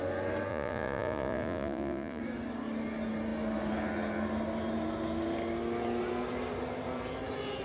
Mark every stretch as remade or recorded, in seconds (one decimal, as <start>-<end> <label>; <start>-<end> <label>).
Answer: 0.0-0.5 recorded; 0.5-2.2 remade; 2.2-7.6 recorded